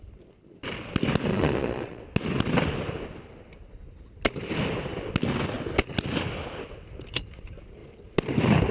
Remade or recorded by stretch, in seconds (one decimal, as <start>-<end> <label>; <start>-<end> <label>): 0.0-1.3 recorded; 1.3-2.0 remade; 2.0-8.7 recorded